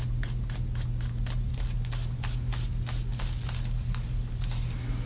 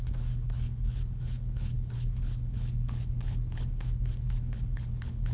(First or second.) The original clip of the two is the first